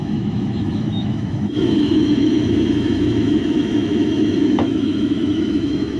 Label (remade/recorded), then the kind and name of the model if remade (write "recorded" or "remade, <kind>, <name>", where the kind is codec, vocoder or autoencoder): remade, autoencoder, DAC-VAE